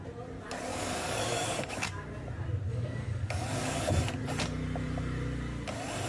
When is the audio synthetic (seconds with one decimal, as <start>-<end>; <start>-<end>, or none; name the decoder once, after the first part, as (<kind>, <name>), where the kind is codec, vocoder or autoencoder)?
0.7-1.9 (codec, DAC); 2.7-3.9